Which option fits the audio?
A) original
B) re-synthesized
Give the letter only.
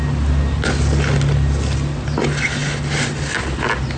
A